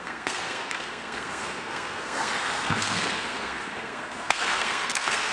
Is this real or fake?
fake